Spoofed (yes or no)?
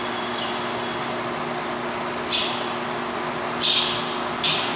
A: no